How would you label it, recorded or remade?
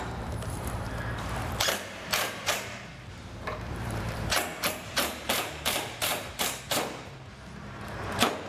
remade